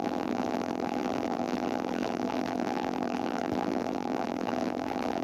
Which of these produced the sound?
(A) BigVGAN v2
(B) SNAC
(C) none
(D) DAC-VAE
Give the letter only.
A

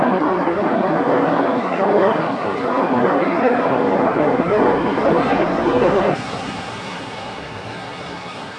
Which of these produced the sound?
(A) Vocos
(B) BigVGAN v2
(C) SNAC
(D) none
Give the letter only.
C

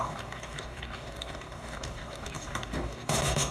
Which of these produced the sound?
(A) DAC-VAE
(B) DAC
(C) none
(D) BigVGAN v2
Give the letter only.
B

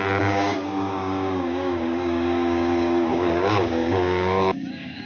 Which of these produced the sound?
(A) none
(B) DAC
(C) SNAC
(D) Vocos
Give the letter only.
B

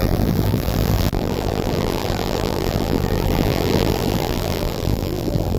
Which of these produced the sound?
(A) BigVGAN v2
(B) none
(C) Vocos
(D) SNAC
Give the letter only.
A